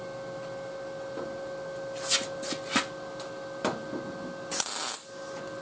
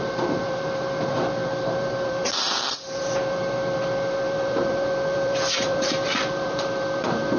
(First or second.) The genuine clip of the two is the first